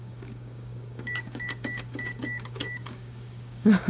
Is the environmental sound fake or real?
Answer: fake